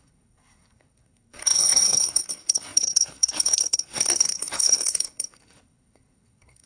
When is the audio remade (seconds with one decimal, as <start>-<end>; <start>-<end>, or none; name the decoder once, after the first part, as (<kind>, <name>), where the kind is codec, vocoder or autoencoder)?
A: 0.0-6.7 (codec, SNAC)